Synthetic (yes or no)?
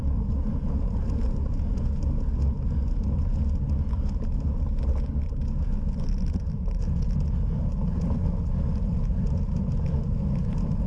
no